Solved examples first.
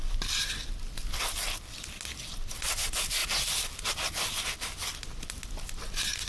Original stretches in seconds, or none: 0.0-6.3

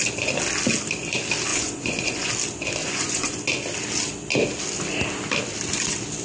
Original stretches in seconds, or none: 0.0-1.5; 2.3-2.8; 3.4-6.2

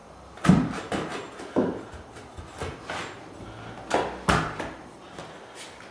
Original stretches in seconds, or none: 0.0-5.9

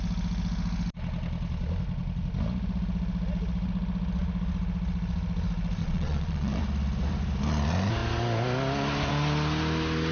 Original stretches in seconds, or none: 0.0-5.8; 6.6-10.1

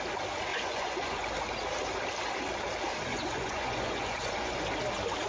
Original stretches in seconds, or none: 0.0-0.5; 1.3-3.1; 4.6-5.3

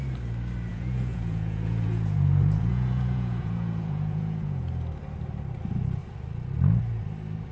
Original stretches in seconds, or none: 0.0-0.7; 4.7-7.5

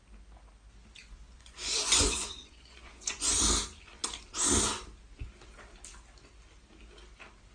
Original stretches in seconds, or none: 0.0-1.0; 3.4-7.5